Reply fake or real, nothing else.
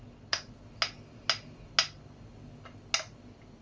real